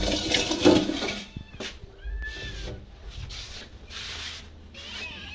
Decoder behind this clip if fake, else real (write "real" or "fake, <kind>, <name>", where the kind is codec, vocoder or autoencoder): real